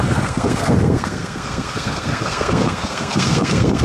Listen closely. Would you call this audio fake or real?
fake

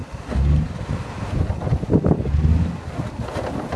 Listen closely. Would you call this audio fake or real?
real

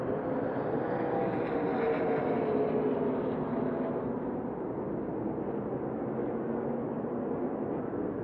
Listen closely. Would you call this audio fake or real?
real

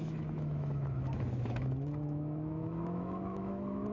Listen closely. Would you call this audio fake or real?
fake